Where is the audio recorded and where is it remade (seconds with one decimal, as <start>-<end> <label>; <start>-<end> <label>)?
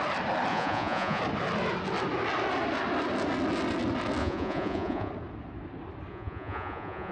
0.0-0.5 recorded; 0.5-1.2 remade; 1.2-4.2 recorded; 4.2-5.1 remade; 5.1-6.1 recorded; 6.1-7.1 remade